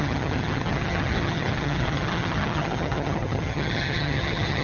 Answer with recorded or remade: remade